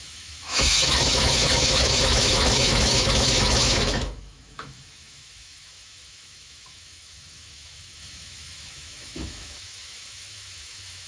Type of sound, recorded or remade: remade